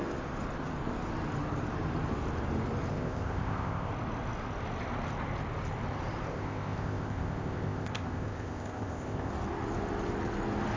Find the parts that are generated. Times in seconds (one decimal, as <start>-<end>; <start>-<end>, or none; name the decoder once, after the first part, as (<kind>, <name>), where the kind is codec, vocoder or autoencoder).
2.9-3.9 (codec, ZipCodec); 6.3-9.3